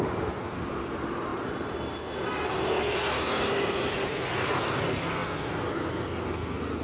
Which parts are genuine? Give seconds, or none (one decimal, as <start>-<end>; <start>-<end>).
0.0-6.8